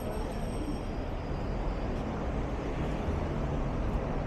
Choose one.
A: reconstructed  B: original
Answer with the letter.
B